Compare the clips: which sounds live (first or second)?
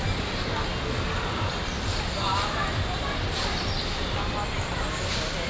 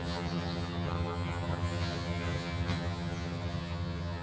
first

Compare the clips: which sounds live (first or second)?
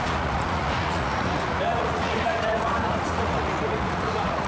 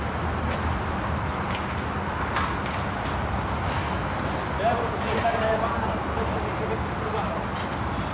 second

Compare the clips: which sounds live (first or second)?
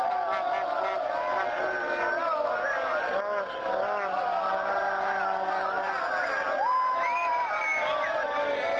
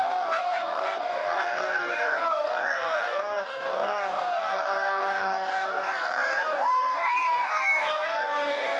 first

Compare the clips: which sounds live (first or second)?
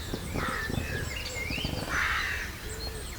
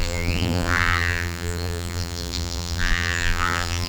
first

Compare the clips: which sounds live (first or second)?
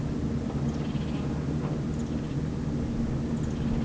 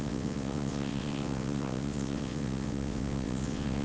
first